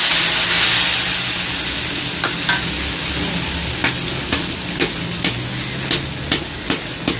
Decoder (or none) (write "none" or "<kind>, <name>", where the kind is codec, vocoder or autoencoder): none